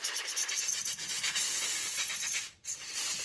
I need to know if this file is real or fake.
real